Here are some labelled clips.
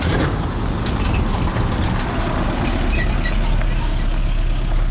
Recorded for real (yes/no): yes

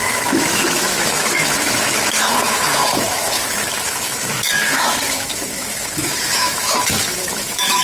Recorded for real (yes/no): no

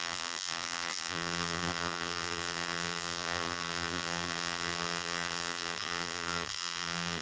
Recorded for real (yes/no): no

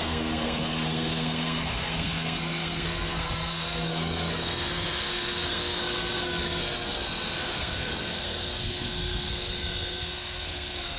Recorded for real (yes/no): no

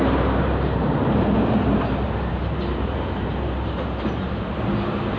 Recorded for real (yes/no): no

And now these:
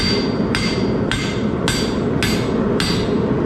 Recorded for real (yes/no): yes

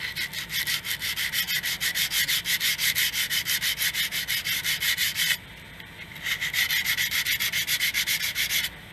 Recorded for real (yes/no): yes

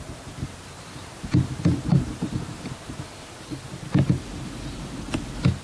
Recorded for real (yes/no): yes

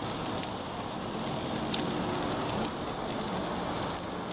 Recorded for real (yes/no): yes